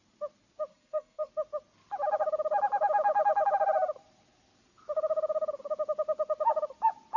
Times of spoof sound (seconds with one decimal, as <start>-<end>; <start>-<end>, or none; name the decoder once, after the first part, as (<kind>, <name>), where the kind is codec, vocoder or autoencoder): 0.7-1.3 (codec, SNAC)